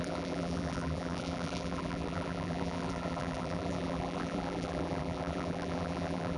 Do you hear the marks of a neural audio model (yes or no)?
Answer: yes